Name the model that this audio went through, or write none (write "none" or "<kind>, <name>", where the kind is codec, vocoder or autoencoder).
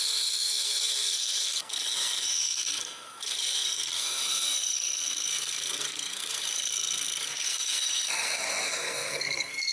codec, SNAC